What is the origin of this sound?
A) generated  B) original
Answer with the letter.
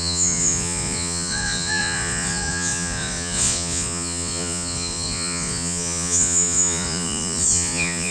A